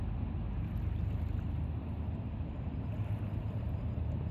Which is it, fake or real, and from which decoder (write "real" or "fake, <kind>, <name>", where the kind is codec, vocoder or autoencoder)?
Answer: real